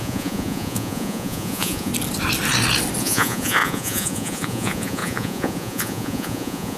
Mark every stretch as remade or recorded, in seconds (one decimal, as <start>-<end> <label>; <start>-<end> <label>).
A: 0.0-1.9 remade; 1.9-3.0 recorded; 3.0-6.8 remade